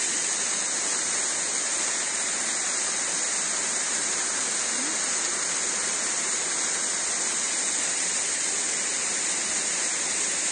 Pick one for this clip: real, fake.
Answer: real